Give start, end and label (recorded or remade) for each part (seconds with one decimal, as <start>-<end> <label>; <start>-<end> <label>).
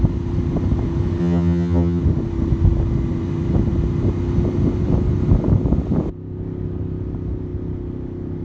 0.0-1.2 recorded; 1.2-2.0 remade; 2.0-8.4 recorded